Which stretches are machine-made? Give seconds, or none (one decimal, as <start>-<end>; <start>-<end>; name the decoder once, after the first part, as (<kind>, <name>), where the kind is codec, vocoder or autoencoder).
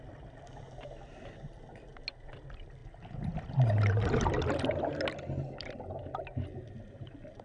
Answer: none